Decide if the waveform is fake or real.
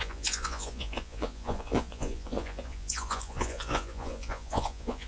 fake